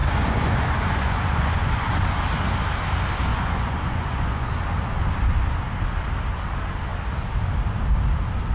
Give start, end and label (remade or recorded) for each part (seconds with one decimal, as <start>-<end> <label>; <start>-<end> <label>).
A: 0.0-1.9 remade; 1.9-3.3 recorded; 3.3-4.5 remade; 4.5-8.5 recorded